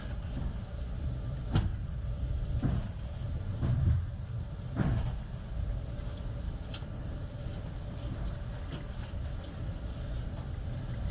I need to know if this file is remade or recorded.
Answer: recorded